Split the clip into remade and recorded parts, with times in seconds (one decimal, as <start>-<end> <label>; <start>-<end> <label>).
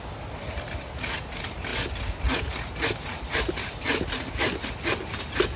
0.0-5.6 recorded